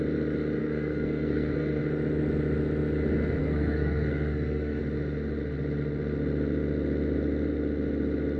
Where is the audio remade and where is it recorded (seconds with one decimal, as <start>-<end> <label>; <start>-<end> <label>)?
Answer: 0.0-0.6 recorded; 0.6-1.8 remade; 1.8-3.4 recorded; 3.4-4.8 remade; 4.8-8.4 recorded